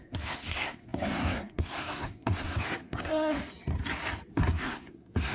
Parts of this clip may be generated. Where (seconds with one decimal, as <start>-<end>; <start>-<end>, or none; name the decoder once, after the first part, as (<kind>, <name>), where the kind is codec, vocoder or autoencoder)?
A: 0.0-3.4 (codec, SNAC); 4.3-5.3